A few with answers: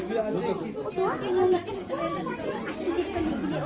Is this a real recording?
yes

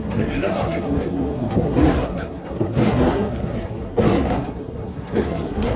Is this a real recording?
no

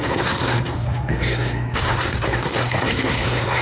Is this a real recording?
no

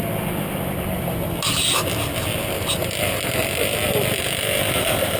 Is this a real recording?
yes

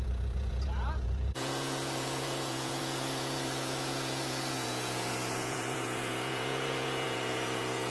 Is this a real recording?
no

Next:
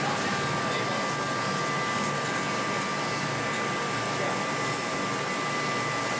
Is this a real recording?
yes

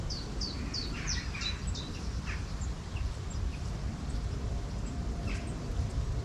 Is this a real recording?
no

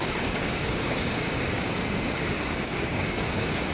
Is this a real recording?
no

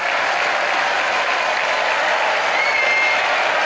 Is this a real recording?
yes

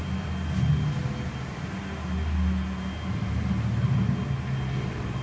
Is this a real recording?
yes